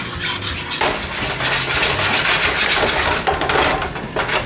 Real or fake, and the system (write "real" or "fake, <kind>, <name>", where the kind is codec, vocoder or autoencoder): real